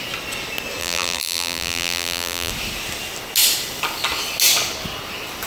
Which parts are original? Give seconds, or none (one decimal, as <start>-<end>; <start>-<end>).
0.0-0.8; 2.5-5.5